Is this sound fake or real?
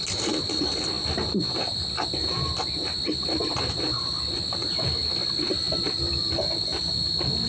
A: real